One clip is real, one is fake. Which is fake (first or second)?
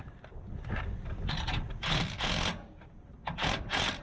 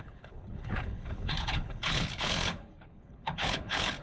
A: second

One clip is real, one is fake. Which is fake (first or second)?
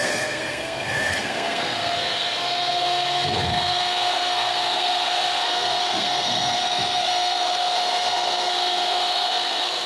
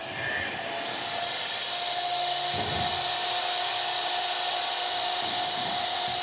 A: first